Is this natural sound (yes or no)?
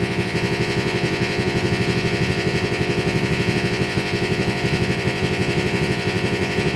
no